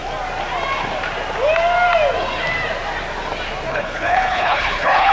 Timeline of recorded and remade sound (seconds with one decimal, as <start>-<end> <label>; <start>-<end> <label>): 0.0-3.7 recorded; 3.7-5.1 remade